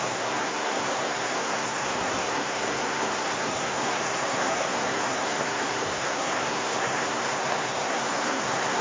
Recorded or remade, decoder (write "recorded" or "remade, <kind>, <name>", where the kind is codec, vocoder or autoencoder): remade, codec, SNAC